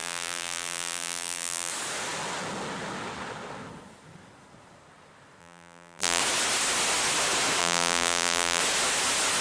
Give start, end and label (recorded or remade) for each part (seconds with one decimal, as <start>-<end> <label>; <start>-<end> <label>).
0.0-1.7 remade; 1.7-5.4 recorded; 5.4-6.2 remade; 6.2-7.6 recorded; 7.6-8.6 remade; 8.6-9.4 recorded